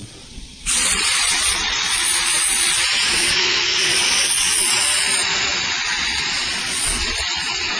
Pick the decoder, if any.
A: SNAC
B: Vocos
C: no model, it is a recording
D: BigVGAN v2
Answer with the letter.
B